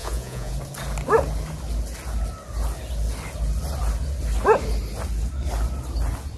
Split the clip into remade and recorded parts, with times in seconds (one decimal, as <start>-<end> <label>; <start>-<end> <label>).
0.0-0.5 remade; 0.5-6.4 recorded